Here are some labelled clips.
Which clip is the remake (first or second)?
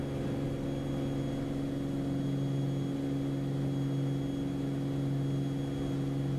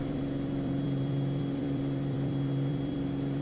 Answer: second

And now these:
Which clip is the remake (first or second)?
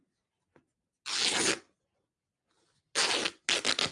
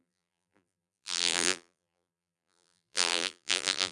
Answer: second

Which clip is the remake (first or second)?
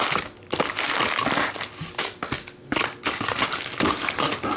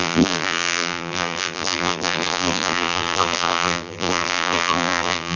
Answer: second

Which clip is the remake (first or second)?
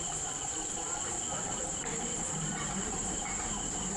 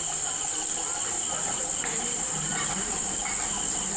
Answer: first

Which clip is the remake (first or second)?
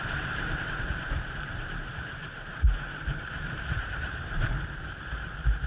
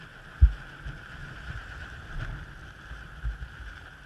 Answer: first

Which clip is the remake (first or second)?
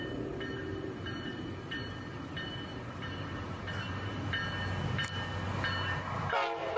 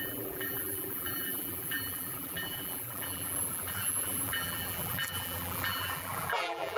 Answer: second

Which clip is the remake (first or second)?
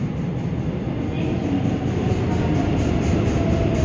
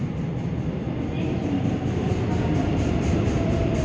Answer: second